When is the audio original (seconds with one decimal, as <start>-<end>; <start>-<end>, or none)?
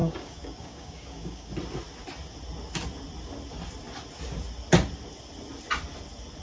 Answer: 1.5-6.4